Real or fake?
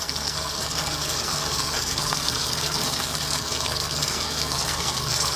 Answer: fake